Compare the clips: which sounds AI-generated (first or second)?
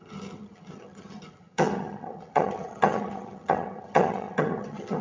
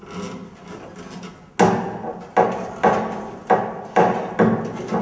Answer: first